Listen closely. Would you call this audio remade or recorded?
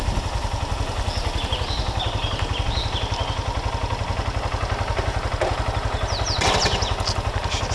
recorded